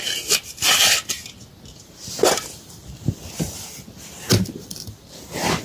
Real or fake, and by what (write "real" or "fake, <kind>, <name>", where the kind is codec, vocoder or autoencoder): real